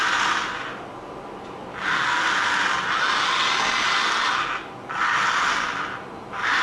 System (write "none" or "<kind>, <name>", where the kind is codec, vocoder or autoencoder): none